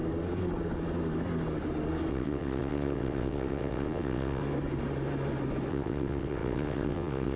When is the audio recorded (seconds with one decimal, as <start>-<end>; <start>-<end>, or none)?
0.0-2.1; 4.4-5.7